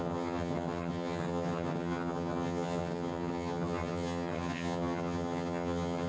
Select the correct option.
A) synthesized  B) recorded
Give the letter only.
A